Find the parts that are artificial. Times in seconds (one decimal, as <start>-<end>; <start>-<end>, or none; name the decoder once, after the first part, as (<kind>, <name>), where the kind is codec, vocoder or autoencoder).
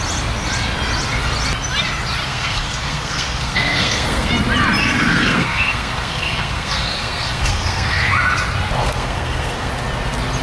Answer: 2.3-4.3 (codec, SNAC); 4.8-8.1; 8.8-9.7